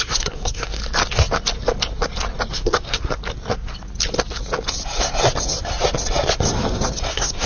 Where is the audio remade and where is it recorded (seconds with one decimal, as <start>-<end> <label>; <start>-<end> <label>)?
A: 0.0-0.8 remade; 0.8-2.5 recorded; 2.5-3.2 remade; 3.2-7.1 recorded; 7.1-7.5 remade